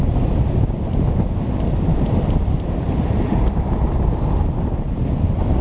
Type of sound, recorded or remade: recorded